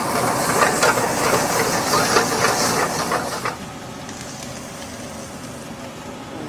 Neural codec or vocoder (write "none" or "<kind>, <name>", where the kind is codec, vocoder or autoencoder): none